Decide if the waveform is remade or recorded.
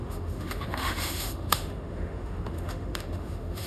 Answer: remade